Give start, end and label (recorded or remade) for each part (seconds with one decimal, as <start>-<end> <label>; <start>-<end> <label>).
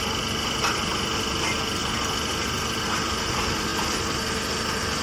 0.0-5.0 recorded